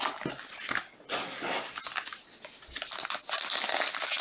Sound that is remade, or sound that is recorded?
recorded